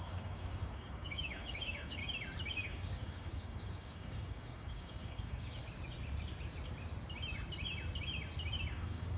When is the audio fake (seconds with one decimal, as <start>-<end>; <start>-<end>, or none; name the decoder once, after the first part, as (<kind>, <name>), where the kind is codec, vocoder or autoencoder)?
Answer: 0.0-2.0 (codec, DAC); 2.5-5.6; 8.7-9.2